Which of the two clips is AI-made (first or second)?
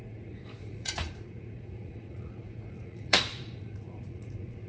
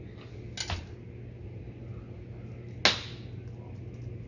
first